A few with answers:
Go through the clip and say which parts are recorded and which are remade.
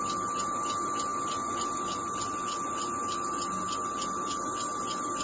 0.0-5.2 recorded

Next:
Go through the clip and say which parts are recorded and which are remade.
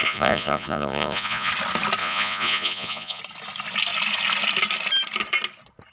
0.0-1.5 remade; 1.5-2.0 recorded; 2.0-3.2 remade; 3.2-5.9 recorded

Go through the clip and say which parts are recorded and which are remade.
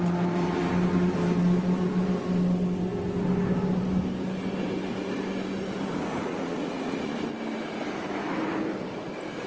0.0-6.1 recorded; 6.1-7.2 remade; 7.2-9.5 recorded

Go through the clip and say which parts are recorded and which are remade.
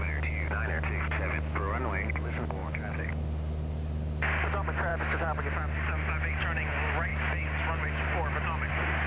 0.0-2.6 recorded; 2.6-3.1 remade; 3.1-4.9 recorded; 4.9-6.4 remade; 6.4-7.1 recorded; 7.1-8.7 remade; 8.7-9.1 recorded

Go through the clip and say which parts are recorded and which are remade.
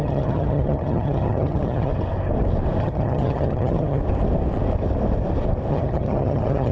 0.0-1.9 remade; 1.9-2.8 recorded; 2.8-4.0 remade; 4.0-5.7 recorded; 5.7-6.7 remade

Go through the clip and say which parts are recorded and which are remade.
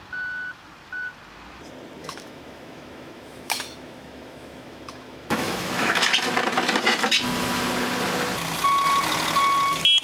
0.0-2.0 recorded; 2.0-6.1 remade; 6.1-10.0 recorded